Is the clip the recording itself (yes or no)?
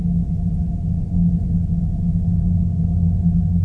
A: yes